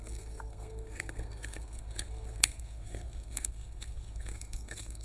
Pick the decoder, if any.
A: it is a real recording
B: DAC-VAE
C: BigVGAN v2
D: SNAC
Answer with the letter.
D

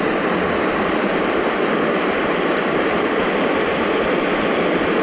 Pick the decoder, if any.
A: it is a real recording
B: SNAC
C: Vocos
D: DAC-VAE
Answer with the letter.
A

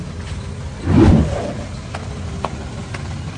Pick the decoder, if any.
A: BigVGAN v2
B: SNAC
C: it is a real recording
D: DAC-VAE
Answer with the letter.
C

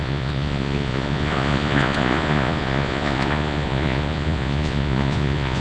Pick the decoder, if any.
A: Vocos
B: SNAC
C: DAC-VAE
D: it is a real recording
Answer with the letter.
A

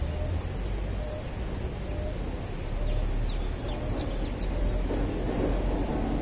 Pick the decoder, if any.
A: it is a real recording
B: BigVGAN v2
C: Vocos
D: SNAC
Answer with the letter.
A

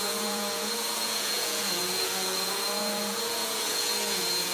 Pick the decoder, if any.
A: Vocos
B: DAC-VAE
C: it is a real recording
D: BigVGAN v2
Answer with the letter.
A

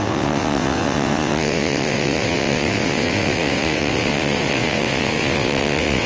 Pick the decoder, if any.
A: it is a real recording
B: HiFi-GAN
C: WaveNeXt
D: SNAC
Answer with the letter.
C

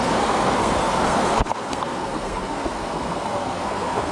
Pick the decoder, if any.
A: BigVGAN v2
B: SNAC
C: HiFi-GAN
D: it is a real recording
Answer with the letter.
B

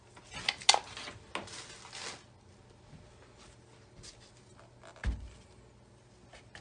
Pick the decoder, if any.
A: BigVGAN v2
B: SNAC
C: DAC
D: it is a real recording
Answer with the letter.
D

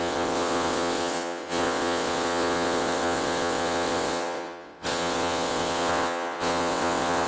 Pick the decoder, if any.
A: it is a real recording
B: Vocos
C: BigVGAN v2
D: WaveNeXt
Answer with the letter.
D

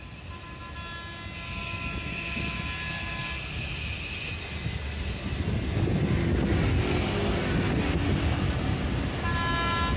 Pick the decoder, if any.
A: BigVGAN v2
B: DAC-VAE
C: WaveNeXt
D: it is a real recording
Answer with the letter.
D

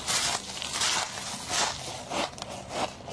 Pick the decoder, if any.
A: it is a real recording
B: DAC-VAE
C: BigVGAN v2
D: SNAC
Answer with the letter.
A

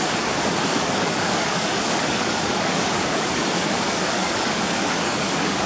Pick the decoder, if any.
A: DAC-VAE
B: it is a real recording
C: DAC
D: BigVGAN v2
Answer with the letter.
C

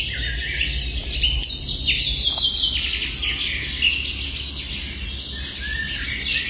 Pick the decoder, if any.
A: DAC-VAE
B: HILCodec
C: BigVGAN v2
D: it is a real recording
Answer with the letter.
D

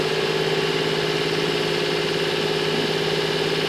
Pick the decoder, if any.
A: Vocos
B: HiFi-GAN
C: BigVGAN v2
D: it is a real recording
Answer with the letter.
D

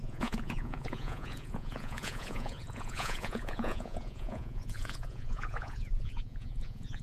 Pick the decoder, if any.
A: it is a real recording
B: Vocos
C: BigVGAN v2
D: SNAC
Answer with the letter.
B